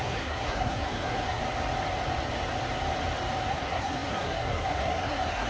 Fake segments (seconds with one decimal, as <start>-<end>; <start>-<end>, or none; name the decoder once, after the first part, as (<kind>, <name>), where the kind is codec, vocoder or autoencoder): 0.0-1.4 (codec, SNAC); 3.5-5.5

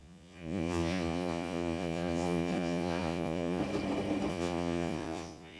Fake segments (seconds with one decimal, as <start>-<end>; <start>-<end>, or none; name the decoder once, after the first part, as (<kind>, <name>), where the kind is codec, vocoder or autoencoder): 0.0-3.6 (vocoder, Vocos); 4.3-5.6

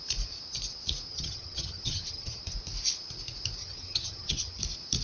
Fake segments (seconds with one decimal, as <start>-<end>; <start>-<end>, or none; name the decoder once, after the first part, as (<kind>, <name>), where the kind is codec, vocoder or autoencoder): 1.1-2.4 (vocoder, HiFi-GAN); 3.6-4.6

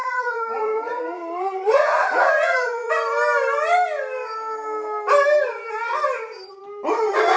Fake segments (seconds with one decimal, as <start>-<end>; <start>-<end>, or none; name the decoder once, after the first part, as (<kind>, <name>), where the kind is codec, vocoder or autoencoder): 0.0-2.9 (vocoder, Vocos)

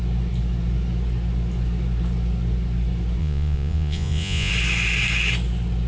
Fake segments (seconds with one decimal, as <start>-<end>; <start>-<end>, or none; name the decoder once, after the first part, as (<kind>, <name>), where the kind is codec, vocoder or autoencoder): 3.2-4.5 (vocoder, Vocos)